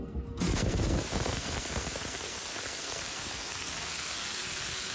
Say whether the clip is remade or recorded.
remade